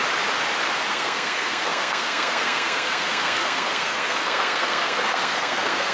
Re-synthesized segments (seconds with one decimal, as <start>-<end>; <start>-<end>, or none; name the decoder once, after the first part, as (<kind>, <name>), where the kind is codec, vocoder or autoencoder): 0.9-5.9 (codec, SNAC)